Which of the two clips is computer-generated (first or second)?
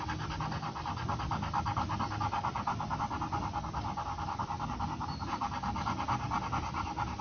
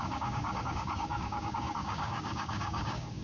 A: second